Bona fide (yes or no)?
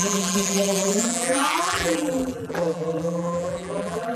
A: no